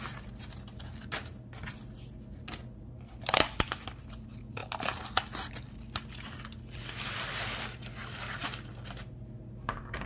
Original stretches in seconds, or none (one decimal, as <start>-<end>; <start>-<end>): 0.0-10.1